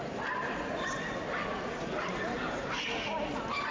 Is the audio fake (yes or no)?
no